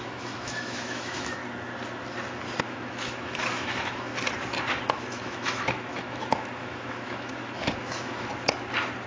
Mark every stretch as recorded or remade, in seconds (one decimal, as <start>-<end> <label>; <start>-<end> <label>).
0.0-1.4 remade; 1.4-2.6 recorded; 2.6-4.1 remade; 4.1-4.9 recorded; 4.9-8.3 remade; 8.3-9.1 recorded